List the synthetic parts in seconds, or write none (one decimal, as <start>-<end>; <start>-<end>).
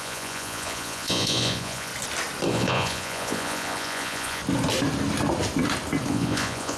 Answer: 0.0-1.9; 2.5-4.4; 6.1-6.8